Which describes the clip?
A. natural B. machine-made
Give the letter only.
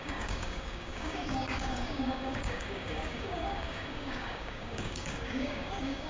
B